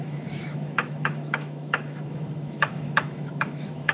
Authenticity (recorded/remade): remade